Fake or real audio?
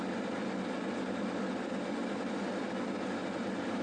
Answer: real